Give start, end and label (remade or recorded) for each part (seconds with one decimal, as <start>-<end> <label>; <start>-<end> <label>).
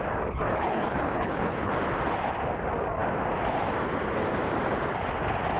0.0-0.5 recorded; 0.5-1.7 remade; 1.7-5.6 recorded